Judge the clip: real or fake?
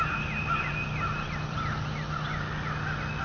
real